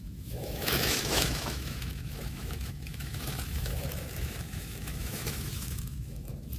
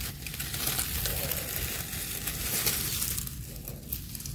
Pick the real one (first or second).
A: second